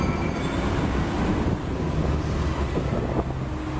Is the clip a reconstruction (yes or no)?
no